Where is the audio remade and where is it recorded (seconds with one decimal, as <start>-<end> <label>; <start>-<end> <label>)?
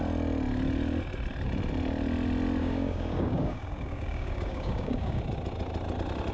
0.0-2.6 recorded; 2.6-5.2 remade; 5.2-6.3 recorded